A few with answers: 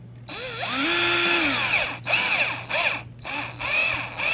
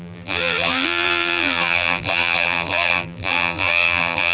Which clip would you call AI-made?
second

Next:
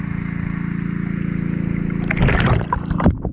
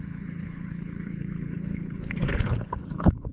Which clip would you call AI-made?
second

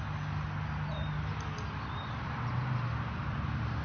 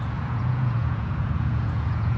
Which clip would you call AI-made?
second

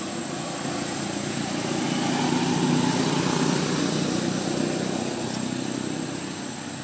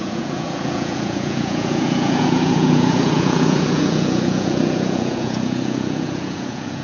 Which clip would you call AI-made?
second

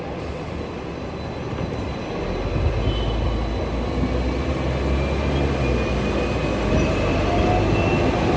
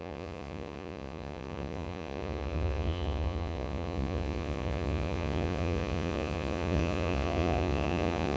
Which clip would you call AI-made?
second